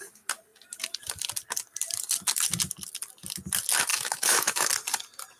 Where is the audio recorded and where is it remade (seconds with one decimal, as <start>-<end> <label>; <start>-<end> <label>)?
0.0-3.9 recorded; 3.9-4.7 remade; 4.7-5.4 recorded